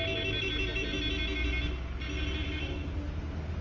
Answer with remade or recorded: recorded